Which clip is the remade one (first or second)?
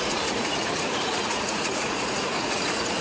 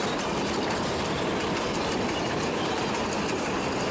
first